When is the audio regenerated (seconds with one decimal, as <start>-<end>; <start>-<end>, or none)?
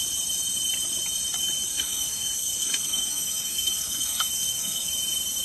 1.7-4.9